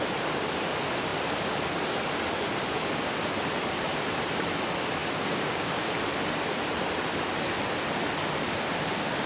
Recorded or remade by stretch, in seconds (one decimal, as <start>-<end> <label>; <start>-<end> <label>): 0.0-5.0 recorded; 5.0-5.9 remade; 5.9-9.3 recorded